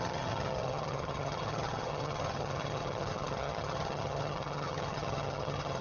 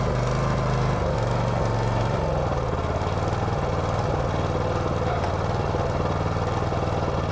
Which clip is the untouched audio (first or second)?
second